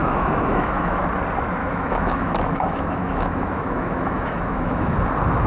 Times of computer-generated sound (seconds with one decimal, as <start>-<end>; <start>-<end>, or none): 0.0-1.0; 1.6-4.9